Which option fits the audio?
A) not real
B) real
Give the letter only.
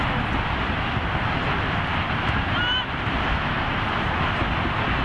B